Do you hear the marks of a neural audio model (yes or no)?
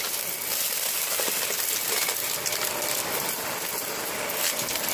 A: no